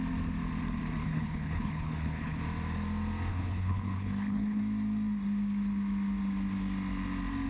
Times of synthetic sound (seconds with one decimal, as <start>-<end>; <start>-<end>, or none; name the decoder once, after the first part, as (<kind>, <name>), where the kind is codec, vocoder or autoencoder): 1.0-2.4 (codec, HILCodec); 3.3-4.6